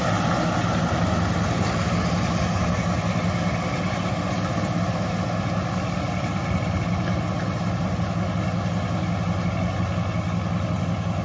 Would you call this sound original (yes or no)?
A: yes